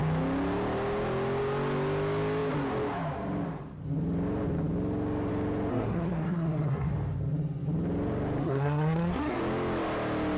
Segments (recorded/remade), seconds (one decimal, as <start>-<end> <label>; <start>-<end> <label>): 0.0-5.7 recorded; 5.7-6.9 remade; 6.9-8.4 recorded; 8.4-9.4 remade; 9.4-10.4 recorded